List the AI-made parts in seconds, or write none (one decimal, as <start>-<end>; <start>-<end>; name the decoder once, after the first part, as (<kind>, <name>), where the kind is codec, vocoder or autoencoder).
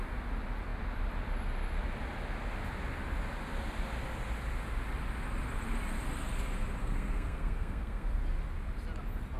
6.8-8.2 (codec, SNAC)